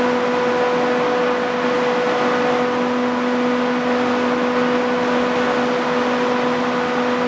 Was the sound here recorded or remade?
recorded